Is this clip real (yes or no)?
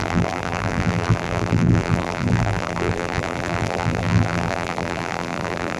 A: no